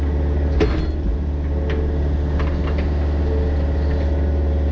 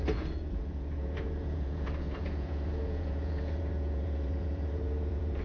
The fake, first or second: second